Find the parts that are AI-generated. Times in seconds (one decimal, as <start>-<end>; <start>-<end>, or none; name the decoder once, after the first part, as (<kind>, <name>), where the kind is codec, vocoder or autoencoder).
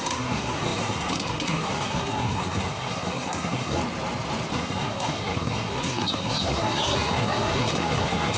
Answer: 0.0-3.8 (codec, SNAC); 4.5-8.4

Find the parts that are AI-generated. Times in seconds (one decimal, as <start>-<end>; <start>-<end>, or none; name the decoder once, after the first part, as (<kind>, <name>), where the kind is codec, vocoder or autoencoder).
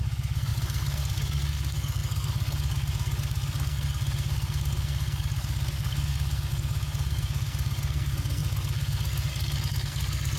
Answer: 0.0-10.4 (codec, SNAC)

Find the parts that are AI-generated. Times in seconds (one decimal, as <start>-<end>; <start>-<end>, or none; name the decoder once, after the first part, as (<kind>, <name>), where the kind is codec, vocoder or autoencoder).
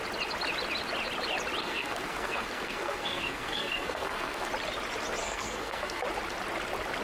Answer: 1.6-4.5 (codec, SNAC); 5.2-6.0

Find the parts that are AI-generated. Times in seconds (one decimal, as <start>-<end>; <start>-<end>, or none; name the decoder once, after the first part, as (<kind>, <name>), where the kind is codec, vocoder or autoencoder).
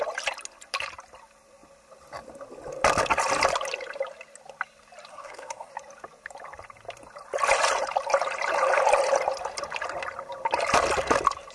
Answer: 5.1-5.7 (codec, SNAC)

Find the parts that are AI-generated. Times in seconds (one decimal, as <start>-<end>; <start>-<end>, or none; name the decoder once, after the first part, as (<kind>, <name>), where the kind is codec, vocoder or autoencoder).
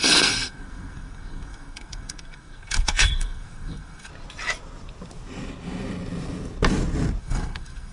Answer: 0.0-4.1 (codec, SNAC); 7.2-7.9